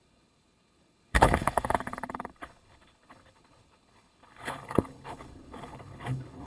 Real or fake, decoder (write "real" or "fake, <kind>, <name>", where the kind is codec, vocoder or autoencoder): fake, codec, HILCodec